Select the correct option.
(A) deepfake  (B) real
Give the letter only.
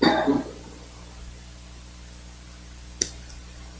B